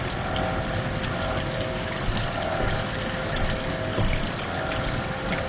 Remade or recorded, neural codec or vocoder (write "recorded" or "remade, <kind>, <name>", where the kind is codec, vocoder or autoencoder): recorded